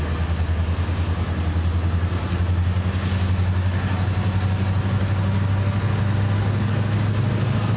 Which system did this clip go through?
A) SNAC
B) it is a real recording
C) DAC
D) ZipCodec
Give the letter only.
B